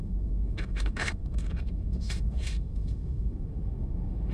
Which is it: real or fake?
fake